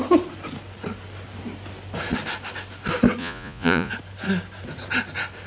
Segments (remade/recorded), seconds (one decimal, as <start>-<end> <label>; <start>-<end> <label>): 0.0-3.2 recorded; 3.2-3.9 remade; 3.9-5.5 recorded